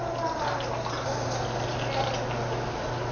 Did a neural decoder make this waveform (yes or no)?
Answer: no